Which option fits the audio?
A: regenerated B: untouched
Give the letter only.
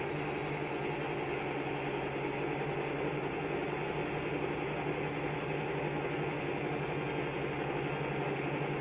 B